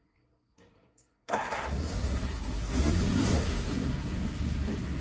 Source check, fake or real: fake